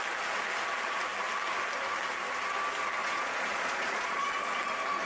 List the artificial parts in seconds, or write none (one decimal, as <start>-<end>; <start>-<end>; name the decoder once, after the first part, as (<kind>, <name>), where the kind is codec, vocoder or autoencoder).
3.0-4.3 (vocoder, Vocos)